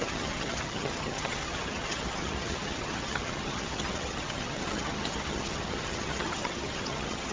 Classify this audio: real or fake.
fake